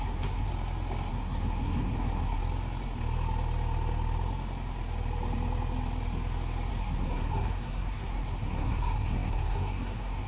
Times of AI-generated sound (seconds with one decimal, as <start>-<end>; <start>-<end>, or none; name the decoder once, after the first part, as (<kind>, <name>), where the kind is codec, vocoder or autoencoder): 0.0-0.5 (codec, SNAC); 1.1-2.4; 6.7-10.3